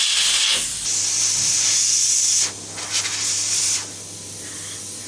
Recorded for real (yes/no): yes